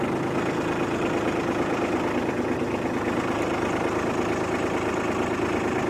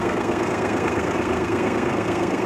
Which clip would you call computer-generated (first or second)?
second